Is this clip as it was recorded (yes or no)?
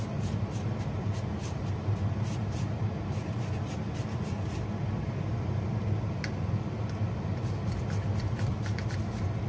yes